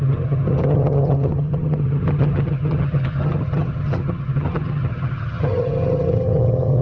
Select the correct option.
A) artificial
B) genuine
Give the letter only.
A